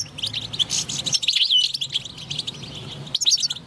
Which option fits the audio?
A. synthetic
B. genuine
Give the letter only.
B